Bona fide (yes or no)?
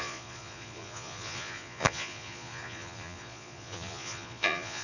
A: no